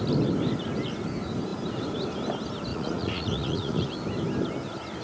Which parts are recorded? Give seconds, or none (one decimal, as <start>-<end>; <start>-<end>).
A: 0.0-2.7; 3.9-5.0